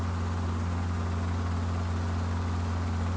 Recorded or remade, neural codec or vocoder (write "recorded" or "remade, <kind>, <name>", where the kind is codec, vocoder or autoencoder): recorded